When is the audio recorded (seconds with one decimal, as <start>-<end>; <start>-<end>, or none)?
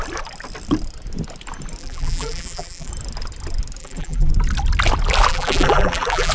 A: 0.0-1.8; 2.9-3.8; 4.3-5.3